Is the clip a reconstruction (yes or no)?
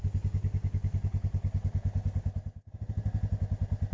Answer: no